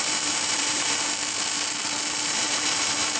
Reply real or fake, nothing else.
fake